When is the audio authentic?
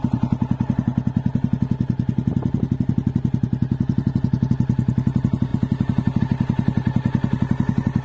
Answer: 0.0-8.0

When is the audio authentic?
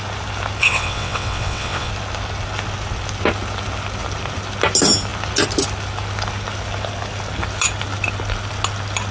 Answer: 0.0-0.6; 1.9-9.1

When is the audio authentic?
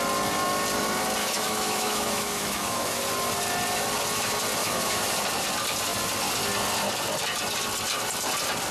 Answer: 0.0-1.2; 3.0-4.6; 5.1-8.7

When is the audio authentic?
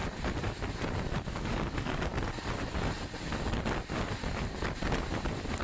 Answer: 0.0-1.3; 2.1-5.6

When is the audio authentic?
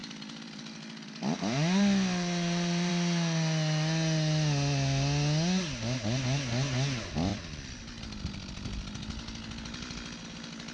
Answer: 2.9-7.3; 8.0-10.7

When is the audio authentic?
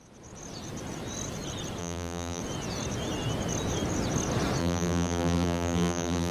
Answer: 0.0-1.8; 2.4-4.6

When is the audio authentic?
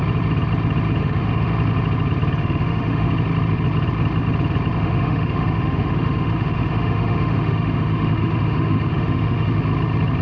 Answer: 0.0-1.0; 1.5-2.4; 3.1-4.8; 9.6-10.2